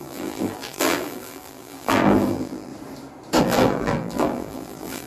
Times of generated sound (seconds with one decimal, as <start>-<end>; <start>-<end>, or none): 0.0-2.7; 3.4-5.1